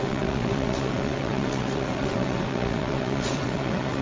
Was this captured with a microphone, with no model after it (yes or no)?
no